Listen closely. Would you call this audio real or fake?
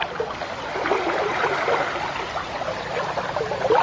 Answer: real